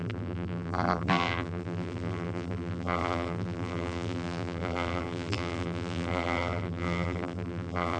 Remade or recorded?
remade